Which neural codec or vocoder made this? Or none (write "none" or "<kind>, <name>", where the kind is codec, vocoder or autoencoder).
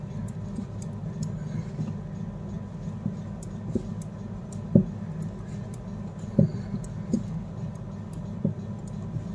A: none